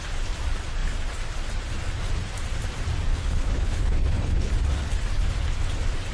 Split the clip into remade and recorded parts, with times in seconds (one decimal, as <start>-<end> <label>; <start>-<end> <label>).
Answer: 0.0-3.1 recorded; 3.1-4.5 remade; 4.5-6.1 recorded